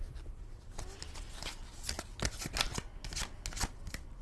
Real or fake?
real